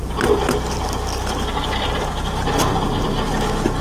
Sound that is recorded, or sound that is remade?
recorded